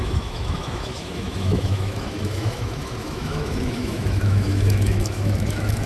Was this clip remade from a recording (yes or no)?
yes